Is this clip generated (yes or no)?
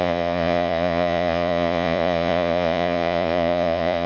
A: yes